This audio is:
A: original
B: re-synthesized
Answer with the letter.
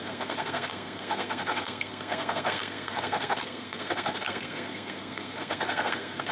B